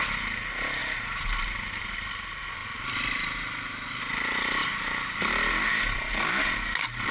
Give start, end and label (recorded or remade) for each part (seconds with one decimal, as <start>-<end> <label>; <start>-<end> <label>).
0.0-4.6 recorded; 4.6-5.5 remade; 5.5-7.1 recorded